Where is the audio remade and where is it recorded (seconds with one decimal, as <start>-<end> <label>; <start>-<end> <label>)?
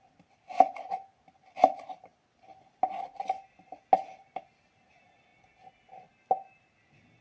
0.0-2.1 remade; 2.1-4.8 recorded; 4.8-7.2 remade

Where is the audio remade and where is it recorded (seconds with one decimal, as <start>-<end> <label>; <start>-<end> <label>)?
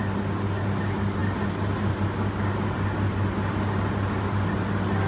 0.0-5.1 recorded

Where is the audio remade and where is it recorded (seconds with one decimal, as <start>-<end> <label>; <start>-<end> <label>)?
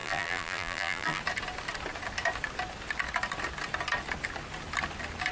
0.0-1.2 remade; 1.2-5.3 recorded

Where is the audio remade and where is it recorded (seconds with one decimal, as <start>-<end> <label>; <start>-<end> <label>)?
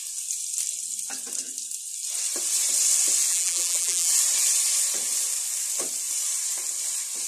0.0-3.3 recorded; 3.3-4.1 remade; 4.1-7.3 recorded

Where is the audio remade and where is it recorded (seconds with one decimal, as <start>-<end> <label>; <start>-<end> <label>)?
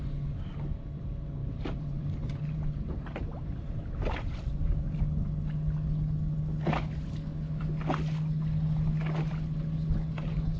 0.0-1.4 recorded; 1.4-5.0 remade; 5.0-10.6 recorded